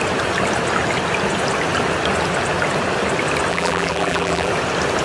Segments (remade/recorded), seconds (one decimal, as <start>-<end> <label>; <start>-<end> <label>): 0.0-3.5 recorded; 3.5-4.5 remade; 4.5-5.0 recorded